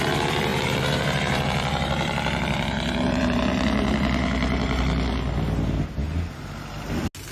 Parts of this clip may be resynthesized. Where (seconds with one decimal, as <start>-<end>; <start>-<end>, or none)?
0.5-4.8